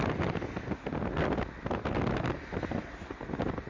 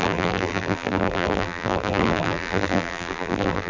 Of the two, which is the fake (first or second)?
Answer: second